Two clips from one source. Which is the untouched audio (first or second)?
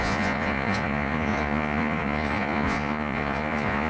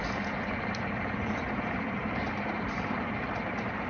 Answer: second